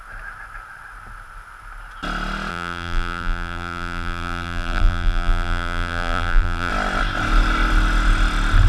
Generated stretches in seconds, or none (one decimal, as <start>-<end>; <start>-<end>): 2.5-6.7